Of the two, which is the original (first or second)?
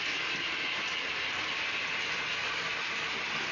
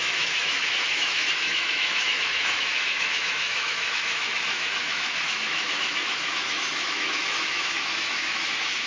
first